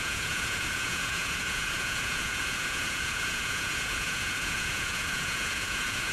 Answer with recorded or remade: remade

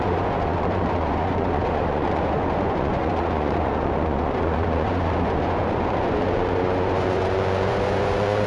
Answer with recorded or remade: remade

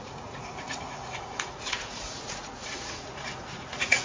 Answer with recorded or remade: remade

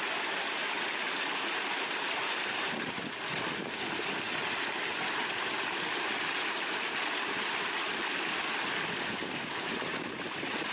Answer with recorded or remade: recorded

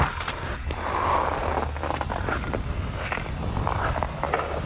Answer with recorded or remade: recorded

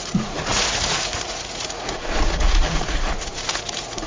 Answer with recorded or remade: remade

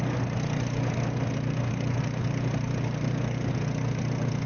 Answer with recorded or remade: recorded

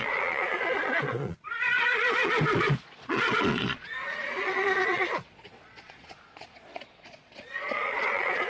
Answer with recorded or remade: remade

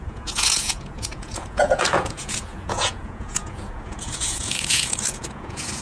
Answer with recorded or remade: remade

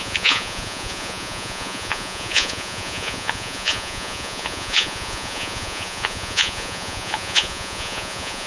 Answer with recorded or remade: remade